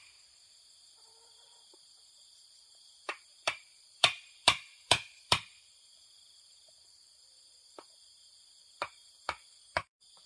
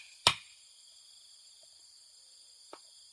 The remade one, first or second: first